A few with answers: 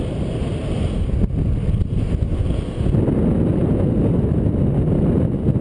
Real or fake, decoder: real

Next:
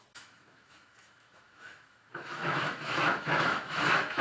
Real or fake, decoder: fake, autoencoder, DAC-VAE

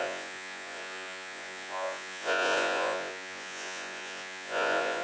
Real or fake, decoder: fake, vocoder, Vocos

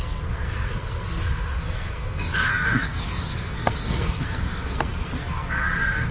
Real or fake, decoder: fake, codec, SNAC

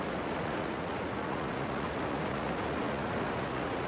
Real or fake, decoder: fake, vocoder, Vocos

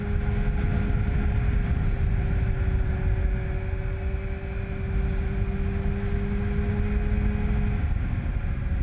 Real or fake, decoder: real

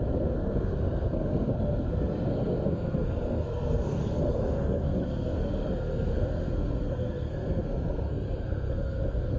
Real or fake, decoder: fake, codec, SNAC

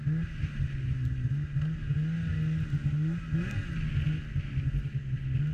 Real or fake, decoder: real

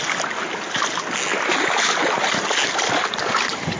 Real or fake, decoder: real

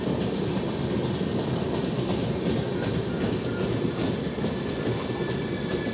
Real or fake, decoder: real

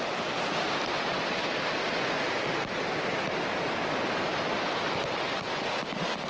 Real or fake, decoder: real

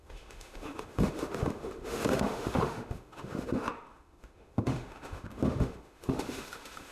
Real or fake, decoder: fake, autoencoder, DAC-VAE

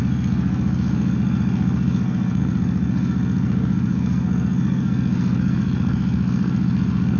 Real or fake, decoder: fake, codec, SNAC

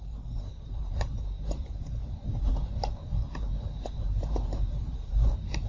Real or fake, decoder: fake, vocoder, BigVGAN v2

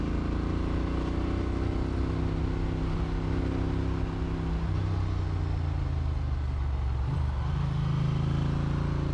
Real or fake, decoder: real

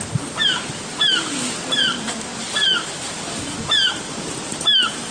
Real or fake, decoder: real